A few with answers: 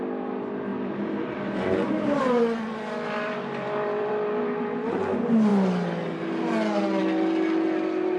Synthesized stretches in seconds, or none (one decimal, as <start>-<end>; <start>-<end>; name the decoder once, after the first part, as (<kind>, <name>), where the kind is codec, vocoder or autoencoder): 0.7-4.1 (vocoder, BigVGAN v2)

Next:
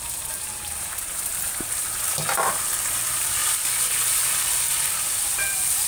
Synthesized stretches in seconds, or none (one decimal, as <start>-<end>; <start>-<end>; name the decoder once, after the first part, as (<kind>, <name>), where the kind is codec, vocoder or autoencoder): 0.0-3.4 (vocoder, BigVGAN v2); 4.3-5.9

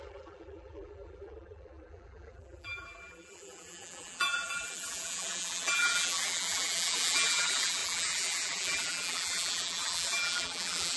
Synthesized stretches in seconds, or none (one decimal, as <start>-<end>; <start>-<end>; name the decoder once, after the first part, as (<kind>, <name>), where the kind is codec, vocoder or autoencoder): 0.0-11.0 (vocoder, BigVGAN v2)